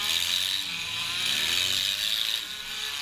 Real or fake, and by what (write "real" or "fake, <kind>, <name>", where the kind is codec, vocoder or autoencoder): real